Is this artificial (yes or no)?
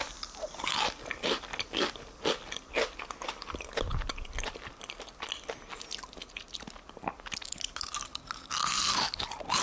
no